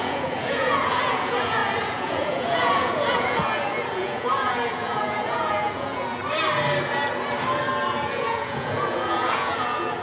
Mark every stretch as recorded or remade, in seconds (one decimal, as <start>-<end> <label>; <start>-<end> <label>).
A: 0.0-6.2 remade; 6.2-7.9 recorded; 7.9-10.0 remade